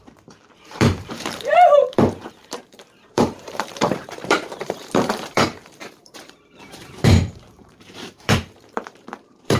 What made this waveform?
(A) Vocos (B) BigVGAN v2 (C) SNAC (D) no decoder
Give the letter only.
B